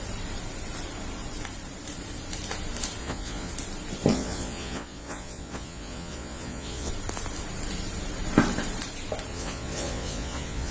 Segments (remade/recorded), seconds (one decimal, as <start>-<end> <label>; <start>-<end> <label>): 0.0-3.0 recorded; 3.0-3.5 remade; 3.5-4.1 recorded; 4.1-6.9 remade; 6.9-9.3 recorded; 9.3-10.7 remade